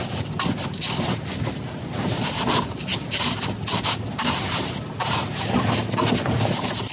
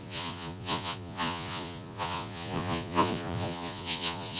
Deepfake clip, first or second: second